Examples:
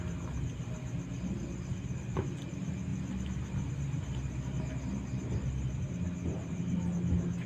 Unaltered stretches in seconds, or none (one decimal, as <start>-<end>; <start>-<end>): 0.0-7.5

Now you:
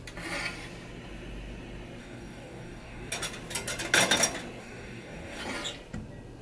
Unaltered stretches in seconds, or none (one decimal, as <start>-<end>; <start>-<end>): 0.0-2.0; 3.1-4.6; 5.4-6.4

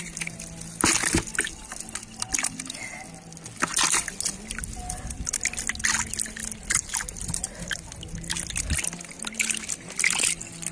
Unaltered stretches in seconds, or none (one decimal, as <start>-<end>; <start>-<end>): 0.0-10.7

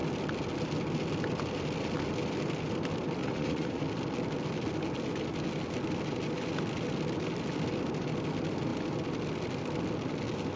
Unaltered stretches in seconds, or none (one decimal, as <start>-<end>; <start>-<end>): 0.0-3.2; 3.8-10.6

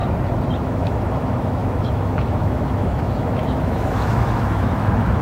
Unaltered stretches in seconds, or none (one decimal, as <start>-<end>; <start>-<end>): 0.0-0.6

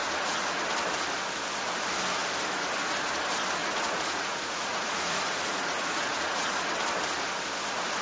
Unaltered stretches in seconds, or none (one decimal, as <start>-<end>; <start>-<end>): 0.5-3.6; 6.6-8.0